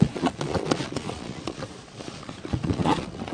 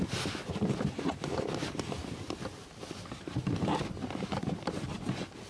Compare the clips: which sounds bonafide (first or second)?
second